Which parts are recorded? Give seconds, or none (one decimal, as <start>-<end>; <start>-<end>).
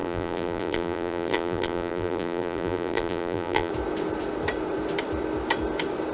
3.7-6.1